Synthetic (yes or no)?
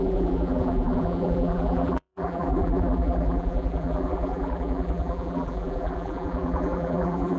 yes